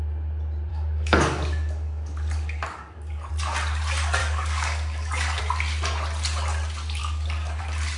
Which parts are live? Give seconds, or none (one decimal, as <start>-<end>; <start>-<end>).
0.0-0.7; 3.3-4.2; 5.4-7.0; 7.6-8.0